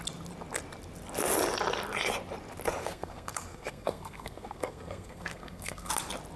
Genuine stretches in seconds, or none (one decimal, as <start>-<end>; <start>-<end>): 0.0-2.8; 5.9-6.4